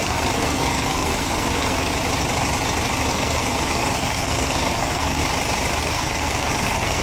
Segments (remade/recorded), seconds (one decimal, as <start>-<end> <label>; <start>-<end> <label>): 0.0-1.9 remade; 1.9-3.1 recorded; 3.1-5.2 remade; 5.2-5.8 recorded; 5.8-7.0 remade